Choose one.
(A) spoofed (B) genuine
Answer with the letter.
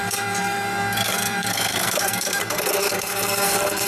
A